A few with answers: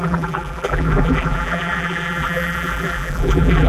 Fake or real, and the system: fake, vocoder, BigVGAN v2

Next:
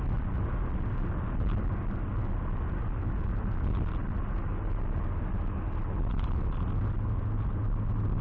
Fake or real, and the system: real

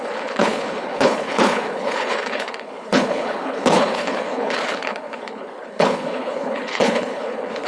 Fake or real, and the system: fake, codec, HILCodec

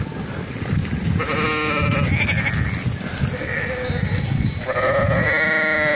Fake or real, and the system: real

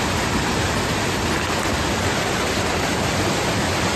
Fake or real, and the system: real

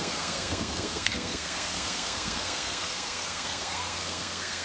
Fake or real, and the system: fake, codec, SNAC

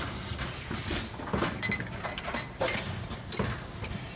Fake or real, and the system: real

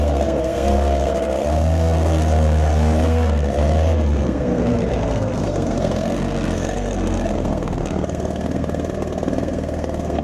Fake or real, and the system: fake, codec, SNAC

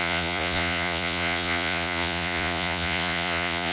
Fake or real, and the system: fake, vocoder, Vocos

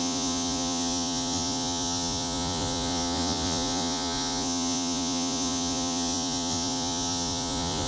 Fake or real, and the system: fake, vocoder, Vocos